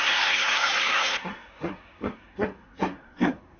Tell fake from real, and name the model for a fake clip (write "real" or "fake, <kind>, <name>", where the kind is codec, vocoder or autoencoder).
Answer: fake, codec, SNAC